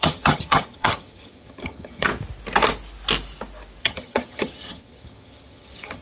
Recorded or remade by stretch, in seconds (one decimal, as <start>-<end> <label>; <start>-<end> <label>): 0.0-2.1 remade; 2.1-3.8 recorded; 3.8-6.0 remade